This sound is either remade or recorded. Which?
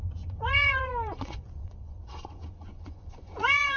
remade